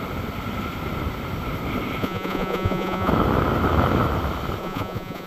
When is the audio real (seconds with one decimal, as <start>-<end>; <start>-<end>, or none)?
0.0-2.0; 3.1-4.6